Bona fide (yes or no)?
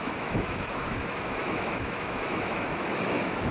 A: no